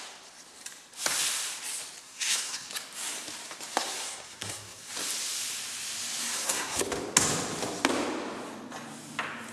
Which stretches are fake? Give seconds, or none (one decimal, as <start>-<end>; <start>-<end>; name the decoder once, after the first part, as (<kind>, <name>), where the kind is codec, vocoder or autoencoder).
2.0-2.7 (codec, SNAC); 3.9-4.9; 6.2-6.8